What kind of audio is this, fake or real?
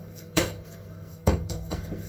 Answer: fake